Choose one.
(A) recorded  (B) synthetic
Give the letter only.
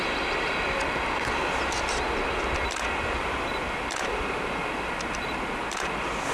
A